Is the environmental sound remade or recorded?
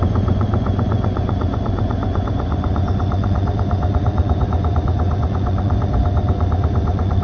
remade